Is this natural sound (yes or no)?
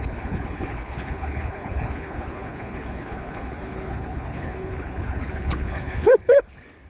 no